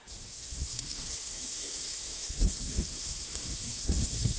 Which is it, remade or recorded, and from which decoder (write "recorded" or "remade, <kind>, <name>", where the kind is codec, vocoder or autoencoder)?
remade, codec, SNAC